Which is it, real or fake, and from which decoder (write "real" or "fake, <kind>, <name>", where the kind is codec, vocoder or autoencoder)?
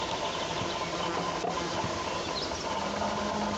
real